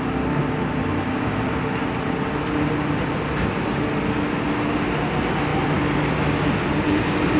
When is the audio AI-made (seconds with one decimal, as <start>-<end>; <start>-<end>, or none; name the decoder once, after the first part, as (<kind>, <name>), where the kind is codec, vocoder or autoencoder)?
none